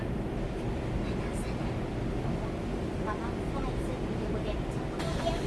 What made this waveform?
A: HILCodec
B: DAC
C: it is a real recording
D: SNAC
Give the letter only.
C